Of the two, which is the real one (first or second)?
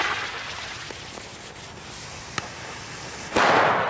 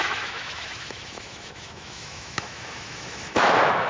first